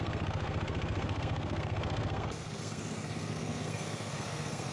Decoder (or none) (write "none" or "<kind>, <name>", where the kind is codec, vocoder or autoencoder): codec, SNAC